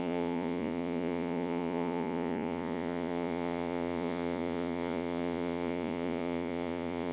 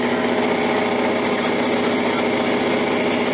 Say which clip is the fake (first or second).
first